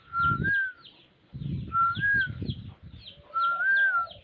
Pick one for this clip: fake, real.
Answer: real